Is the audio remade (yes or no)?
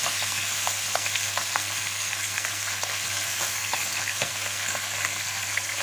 yes